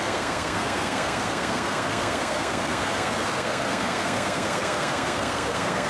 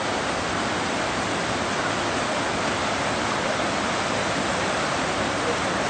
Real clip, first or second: second